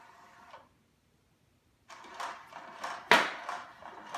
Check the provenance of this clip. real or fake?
real